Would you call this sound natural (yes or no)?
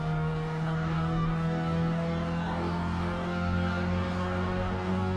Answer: no